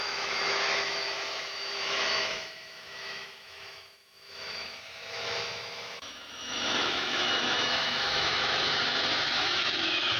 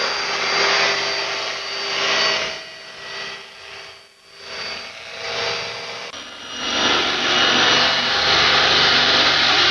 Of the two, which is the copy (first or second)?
first